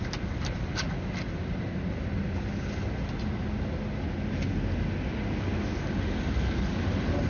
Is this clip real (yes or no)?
yes